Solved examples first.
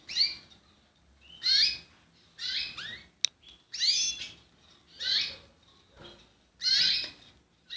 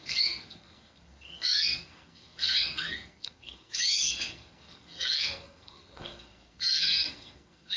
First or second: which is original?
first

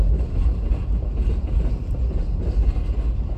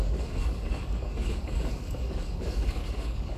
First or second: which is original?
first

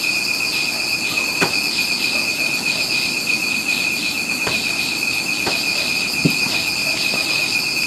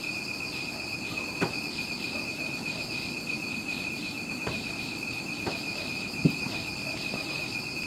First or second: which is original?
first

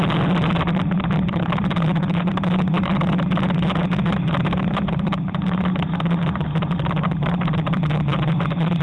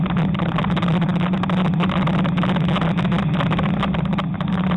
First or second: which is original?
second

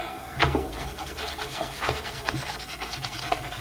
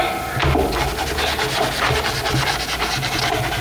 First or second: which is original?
second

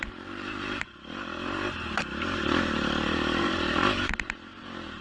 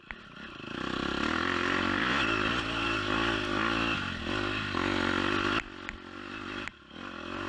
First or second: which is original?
second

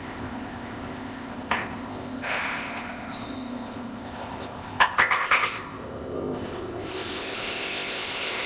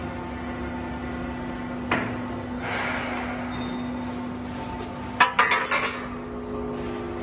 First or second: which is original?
second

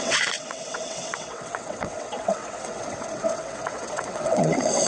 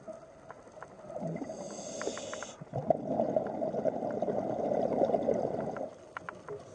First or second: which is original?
second